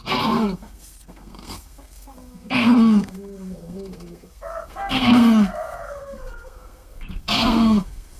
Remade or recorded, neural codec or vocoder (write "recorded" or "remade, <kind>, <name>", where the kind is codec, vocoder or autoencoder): remade, codec, SNAC